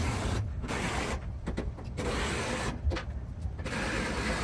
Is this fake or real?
real